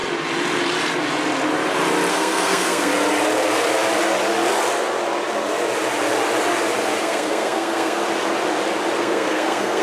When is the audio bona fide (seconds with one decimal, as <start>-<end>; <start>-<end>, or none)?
0.0-2.1; 2.9-7.0; 8.0-9.0